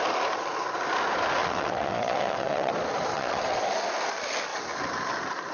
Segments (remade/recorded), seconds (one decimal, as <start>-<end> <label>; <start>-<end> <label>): 0.0-1.4 recorded; 1.4-2.7 remade; 2.7-3.1 recorded; 3.1-3.6 remade; 3.6-5.5 recorded